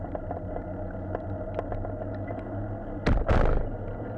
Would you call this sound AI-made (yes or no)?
no